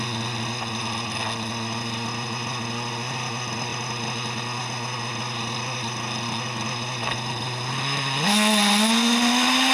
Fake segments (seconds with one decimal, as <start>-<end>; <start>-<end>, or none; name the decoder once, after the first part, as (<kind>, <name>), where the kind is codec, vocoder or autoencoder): none